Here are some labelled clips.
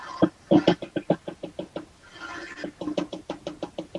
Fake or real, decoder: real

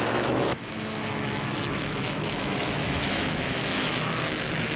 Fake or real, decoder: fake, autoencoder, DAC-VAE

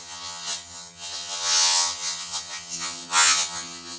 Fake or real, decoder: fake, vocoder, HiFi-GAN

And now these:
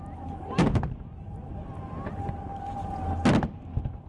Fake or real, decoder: real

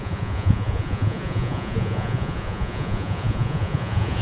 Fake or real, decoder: fake, vocoder, Vocos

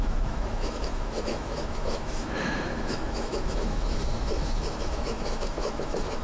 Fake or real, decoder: fake, autoencoder, DAC-VAE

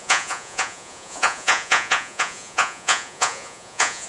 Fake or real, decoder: fake, vocoder, Vocos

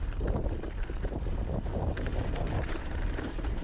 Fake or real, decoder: fake, vocoder, BigVGAN v2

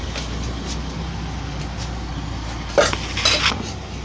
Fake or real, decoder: real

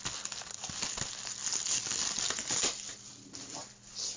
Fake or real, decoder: real